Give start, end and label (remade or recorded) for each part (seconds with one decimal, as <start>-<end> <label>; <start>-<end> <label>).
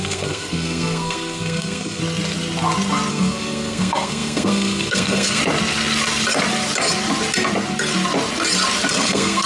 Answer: 0.0-2.0 remade; 2.0-3.1 recorded; 3.1-5.4 remade; 5.4-8.9 recorded; 8.9-9.5 remade